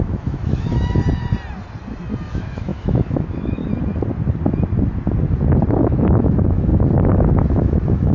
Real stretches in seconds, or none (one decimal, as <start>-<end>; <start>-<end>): 1.0-2.3; 3.6-5.7; 6.7-7.5